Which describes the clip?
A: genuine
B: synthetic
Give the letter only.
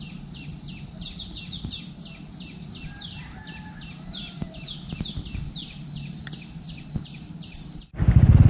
A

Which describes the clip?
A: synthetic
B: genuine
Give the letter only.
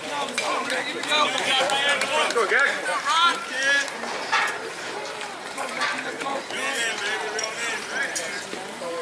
A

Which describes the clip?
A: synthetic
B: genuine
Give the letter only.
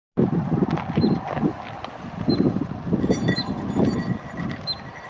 B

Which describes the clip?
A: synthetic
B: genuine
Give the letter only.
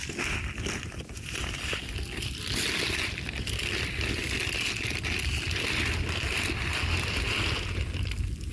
B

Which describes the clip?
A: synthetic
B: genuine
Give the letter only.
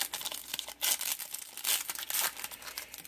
B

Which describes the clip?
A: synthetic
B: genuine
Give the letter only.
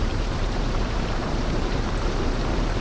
A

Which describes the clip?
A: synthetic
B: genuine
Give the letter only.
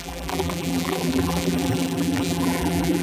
A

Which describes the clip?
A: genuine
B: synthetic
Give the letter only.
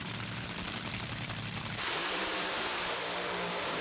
B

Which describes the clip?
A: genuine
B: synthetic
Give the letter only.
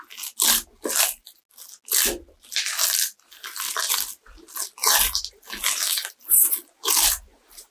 A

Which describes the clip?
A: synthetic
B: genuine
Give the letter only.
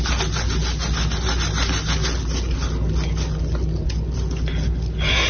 B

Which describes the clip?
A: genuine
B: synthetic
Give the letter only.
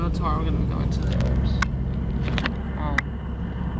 A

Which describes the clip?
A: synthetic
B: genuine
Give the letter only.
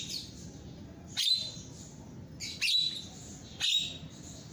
B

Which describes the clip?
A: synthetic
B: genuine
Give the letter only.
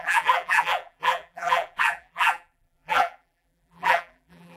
A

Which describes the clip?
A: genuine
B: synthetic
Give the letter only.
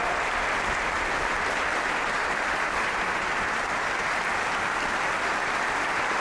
A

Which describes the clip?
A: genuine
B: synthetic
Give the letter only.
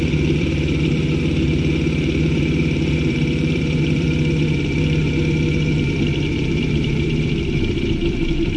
B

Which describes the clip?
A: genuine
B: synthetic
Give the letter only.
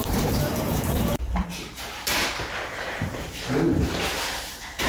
B